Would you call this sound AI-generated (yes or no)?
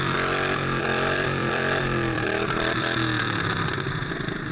yes